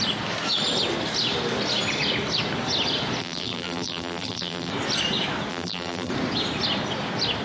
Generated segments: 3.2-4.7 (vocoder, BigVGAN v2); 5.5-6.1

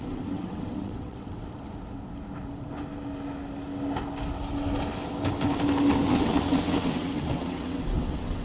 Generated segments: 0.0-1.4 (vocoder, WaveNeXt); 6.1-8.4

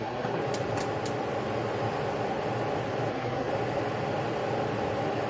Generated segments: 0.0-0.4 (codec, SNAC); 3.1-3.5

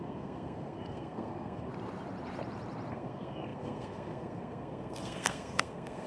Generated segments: 0.0-1.7 (codec, SNAC); 2.9-6.1

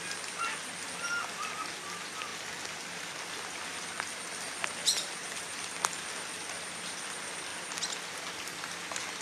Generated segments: none

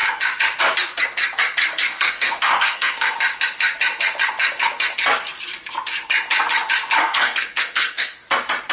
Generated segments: 1.9-3.1 (codec, SNAC); 7.0-8.2